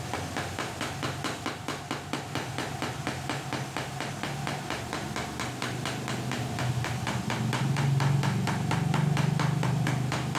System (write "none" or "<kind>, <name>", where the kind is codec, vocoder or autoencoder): none